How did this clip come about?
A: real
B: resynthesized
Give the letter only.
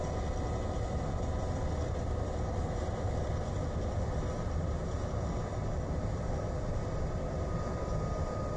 A